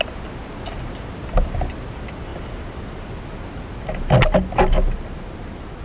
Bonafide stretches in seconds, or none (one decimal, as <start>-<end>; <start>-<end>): 0.0-5.8